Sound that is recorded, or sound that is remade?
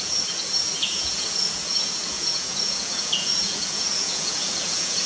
remade